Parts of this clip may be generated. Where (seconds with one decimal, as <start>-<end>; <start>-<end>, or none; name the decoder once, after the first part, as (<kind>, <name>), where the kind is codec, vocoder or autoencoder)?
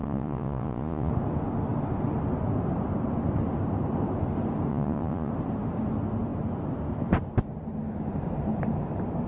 0.0-1.1 (vocoder, Vocos); 4.7-5.3